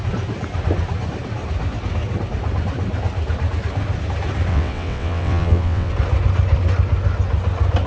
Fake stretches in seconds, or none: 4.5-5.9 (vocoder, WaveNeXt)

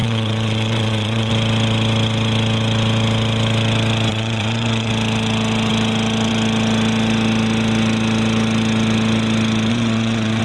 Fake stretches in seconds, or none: 0.0-1.3 (vocoder, Vocos); 4.1-4.9; 9.7-10.4

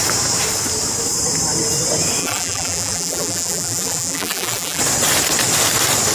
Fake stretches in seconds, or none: 2.2-4.8 (vocoder, BigVGAN v2)

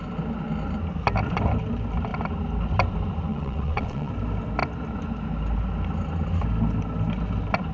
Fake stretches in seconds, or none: 3.3-4.1 (vocoder, WaveNeXt)